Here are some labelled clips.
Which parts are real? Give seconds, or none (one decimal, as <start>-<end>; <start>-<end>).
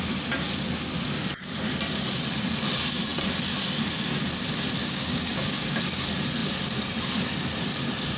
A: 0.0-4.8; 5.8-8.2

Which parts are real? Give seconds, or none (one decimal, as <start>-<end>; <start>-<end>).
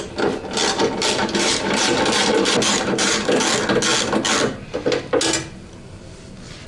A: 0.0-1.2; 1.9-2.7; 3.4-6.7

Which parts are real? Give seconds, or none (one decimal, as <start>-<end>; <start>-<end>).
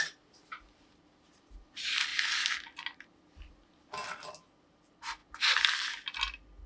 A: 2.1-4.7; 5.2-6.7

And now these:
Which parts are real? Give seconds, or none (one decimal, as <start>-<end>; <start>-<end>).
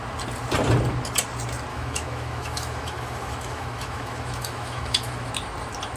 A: 0.0-1.7; 5.3-6.0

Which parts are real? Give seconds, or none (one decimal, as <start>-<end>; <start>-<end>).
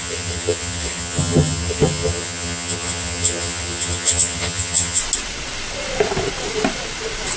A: 5.0-7.4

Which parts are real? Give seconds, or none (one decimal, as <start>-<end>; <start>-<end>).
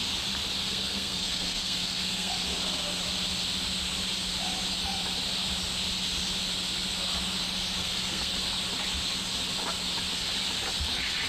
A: 0.0-0.6; 2.3-7.8; 8.4-11.3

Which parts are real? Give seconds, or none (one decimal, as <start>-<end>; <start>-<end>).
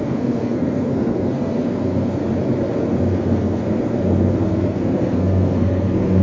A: 2.2-3.0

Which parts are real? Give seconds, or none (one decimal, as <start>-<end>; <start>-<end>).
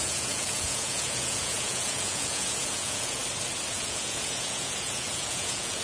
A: 3.2-3.7